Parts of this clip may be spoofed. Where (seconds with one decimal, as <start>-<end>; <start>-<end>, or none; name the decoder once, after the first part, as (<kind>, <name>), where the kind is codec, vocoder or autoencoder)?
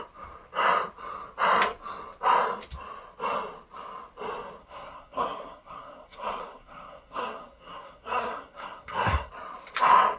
4.6-9.3 (codec, SNAC)